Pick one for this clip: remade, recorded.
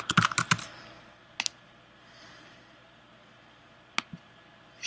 recorded